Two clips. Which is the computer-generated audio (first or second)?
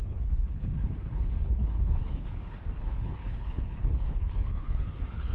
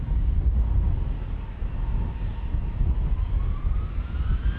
first